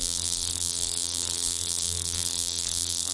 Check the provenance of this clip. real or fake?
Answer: fake